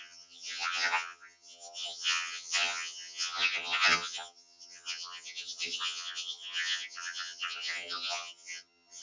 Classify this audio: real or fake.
fake